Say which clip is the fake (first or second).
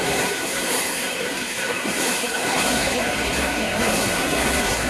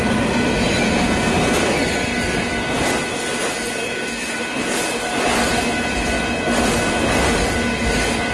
first